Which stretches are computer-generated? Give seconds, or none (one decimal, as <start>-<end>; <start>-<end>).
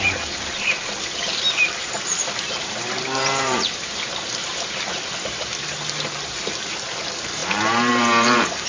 0.0-5.5; 6.9-8.7